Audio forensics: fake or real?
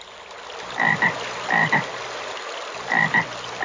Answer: real